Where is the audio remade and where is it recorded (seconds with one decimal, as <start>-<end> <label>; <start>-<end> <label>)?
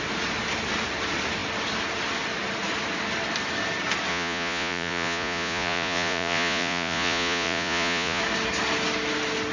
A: 0.0-4.1 recorded; 4.1-8.2 remade; 8.2-9.5 recorded